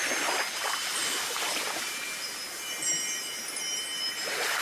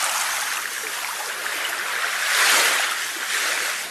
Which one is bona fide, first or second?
second